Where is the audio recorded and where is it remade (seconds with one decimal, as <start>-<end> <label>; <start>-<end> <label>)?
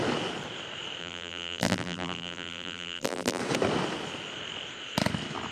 0.0-1.0 recorded; 1.0-3.4 remade; 3.4-5.5 recorded